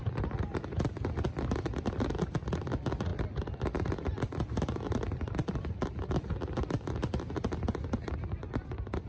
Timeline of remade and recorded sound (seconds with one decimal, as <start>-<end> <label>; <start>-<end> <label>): 0.0-9.1 recorded